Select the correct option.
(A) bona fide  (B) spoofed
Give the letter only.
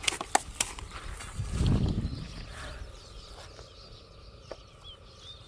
A